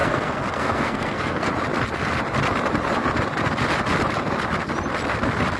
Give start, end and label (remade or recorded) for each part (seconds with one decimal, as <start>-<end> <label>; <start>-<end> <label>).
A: 0.0-1.5 remade; 1.5-5.6 recorded